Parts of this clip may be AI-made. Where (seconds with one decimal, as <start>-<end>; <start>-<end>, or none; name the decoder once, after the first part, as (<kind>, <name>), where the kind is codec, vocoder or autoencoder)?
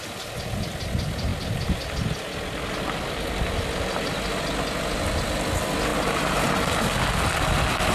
none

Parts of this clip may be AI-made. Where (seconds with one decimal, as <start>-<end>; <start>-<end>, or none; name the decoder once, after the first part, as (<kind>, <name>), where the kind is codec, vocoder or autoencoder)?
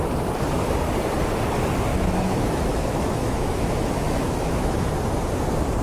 1.9-4.9 (autoencoder, DAC-VAE)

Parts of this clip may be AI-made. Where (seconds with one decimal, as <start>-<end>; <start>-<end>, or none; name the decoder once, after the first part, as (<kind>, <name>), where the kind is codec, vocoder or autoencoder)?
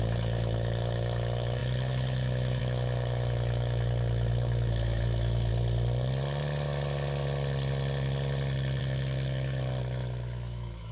0.0-5.5 (autoencoder, DAC-VAE); 8.8-10.9